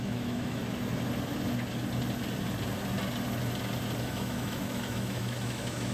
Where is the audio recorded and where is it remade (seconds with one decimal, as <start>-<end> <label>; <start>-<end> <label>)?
0.0-0.6 remade; 0.6-4.0 recorded; 4.0-5.9 remade